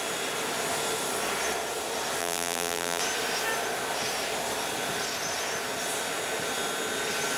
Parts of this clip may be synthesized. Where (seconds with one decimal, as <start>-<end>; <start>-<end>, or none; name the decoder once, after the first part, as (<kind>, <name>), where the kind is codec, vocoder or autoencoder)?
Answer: 2.2-3.0 (vocoder, BigVGAN v2)